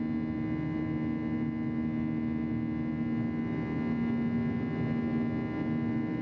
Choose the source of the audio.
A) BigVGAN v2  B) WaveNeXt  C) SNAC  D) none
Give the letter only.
D